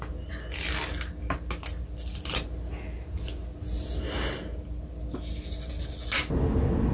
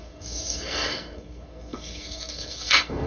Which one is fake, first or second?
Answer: second